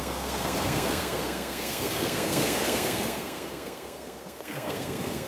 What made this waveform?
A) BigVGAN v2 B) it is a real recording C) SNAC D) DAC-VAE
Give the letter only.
C